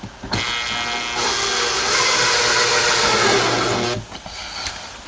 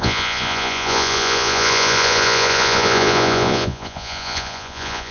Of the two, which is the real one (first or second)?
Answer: first